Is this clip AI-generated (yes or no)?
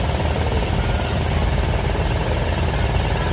no